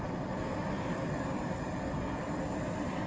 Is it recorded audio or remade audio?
recorded